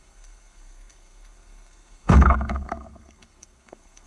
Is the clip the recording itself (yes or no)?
no